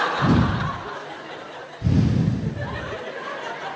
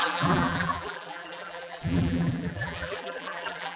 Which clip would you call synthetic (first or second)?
second